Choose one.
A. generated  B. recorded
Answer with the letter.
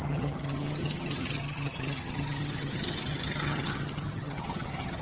A